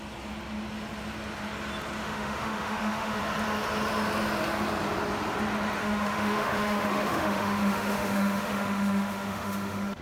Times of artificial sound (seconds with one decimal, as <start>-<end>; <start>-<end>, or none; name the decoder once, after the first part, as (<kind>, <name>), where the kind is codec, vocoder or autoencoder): 2.0-3.2 (autoencoder, DAC-VAE); 5.8-10.0